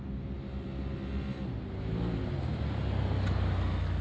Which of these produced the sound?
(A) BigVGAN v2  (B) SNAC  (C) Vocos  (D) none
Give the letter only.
D